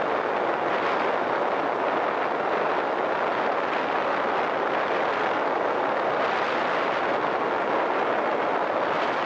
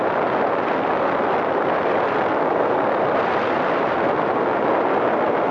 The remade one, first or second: second